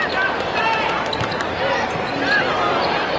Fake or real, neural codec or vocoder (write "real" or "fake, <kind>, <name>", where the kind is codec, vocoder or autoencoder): real